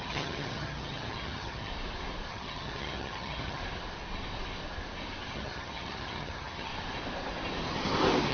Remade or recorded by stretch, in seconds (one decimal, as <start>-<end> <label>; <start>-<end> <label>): 0.0-1.7 remade; 1.7-2.3 recorded; 2.3-3.6 remade; 3.6-5.3 recorded; 5.3-6.7 remade; 6.7-8.3 recorded